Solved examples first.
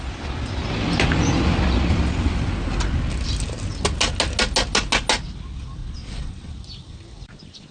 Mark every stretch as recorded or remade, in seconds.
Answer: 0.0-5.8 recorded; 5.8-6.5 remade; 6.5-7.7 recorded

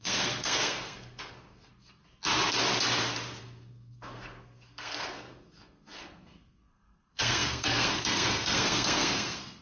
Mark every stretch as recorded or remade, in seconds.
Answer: 0.0-2.0 remade; 2.0-3.4 recorded; 3.4-9.6 remade